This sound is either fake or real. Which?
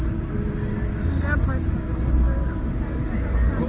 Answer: real